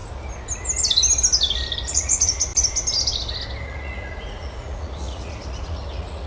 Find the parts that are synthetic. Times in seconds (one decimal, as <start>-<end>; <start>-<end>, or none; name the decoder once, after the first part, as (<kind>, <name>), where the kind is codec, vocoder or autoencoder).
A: 1.9-2.5 (vocoder, Vocos); 3.6-6.3